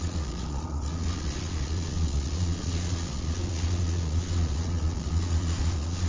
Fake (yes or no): yes